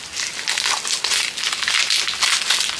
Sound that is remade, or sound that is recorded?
recorded